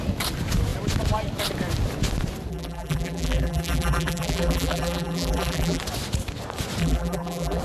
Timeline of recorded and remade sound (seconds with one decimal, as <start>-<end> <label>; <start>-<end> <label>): 0.0-2.5 recorded; 2.5-5.8 remade; 5.8-6.8 recorded; 6.8-7.6 remade